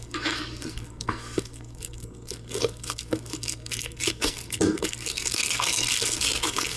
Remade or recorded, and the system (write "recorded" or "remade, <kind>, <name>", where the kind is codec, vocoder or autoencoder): remade, codec, SNAC